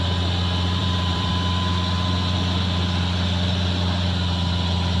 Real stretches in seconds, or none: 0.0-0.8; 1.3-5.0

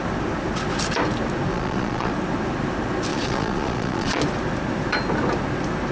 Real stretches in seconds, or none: 0.0-1.5; 2.1-3.1; 4.2-5.9